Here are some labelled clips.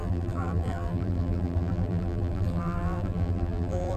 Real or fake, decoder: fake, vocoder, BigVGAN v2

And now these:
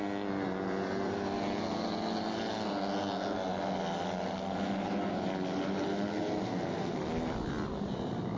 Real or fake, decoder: real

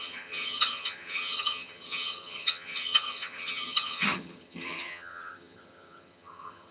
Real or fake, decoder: fake, vocoder, HiFi-GAN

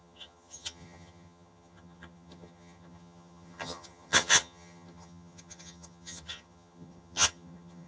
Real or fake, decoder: fake, vocoder, HiFi-GAN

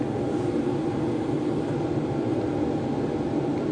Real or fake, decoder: real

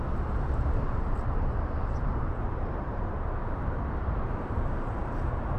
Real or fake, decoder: fake, vocoder, BigVGAN v2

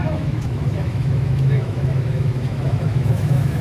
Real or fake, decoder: fake, autoencoder, DAC-VAE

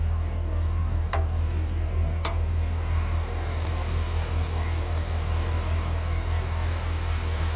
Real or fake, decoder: fake, codec, DAC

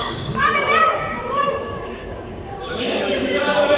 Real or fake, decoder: fake, codec, DAC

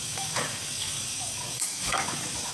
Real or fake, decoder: fake, codec, DAC